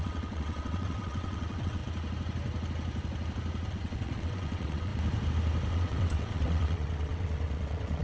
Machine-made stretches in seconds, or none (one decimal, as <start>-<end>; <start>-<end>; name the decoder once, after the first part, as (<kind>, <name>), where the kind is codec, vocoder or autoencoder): 0.0-1.8 (vocoder, WaveNeXt); 3.7-4.9; 5.7-8.0